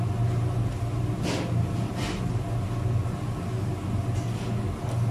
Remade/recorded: recorded